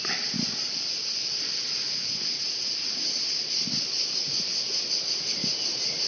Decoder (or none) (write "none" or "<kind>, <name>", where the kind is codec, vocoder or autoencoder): none